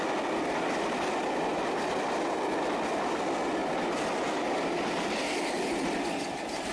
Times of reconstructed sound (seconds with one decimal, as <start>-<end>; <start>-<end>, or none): none